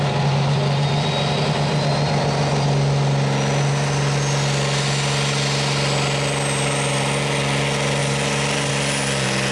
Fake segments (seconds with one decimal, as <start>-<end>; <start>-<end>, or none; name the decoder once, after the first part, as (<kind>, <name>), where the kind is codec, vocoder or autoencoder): none